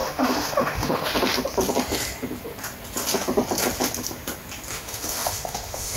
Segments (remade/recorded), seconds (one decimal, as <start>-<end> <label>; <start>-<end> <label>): 0.0-1.1 remade; 1.1-4.7 recorded; 4.7-6.0 remade